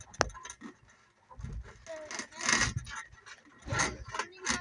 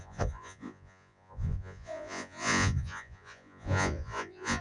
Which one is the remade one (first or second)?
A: second